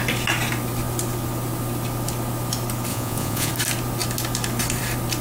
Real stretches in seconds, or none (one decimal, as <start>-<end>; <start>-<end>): 0.0-2.9; 3.5-5.2